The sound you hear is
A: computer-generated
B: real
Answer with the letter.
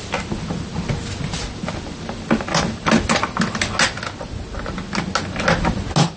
B